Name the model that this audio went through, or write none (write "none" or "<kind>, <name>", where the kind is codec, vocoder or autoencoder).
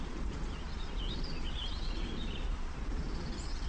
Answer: vocoder, Vocos